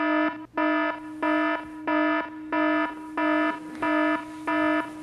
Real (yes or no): yes